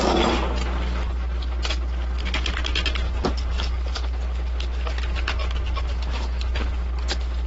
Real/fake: real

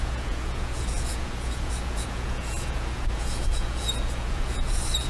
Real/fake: fake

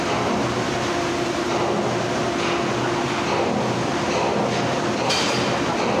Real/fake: real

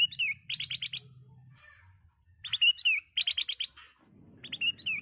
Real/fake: real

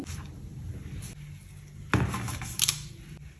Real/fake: real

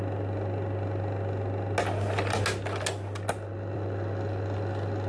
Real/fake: real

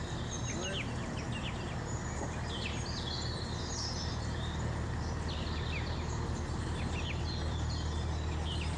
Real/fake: real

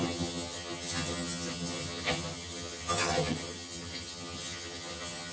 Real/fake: fake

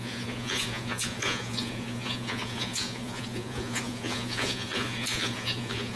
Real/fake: fake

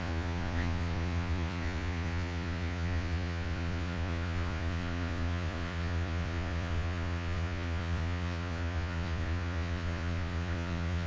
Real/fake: fake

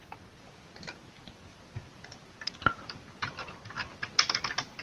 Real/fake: real